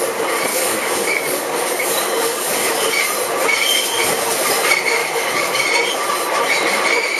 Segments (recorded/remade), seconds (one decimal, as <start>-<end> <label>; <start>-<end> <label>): 0.0-0.5 recorded; 0.5-2.9 remade; 2.9-5.0 recorded; 5.0-5.6 remade; 5.6-7.2 recorded